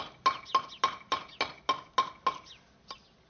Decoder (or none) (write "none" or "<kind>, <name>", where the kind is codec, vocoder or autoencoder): none